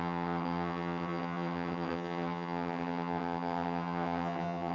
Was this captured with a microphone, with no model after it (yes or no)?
no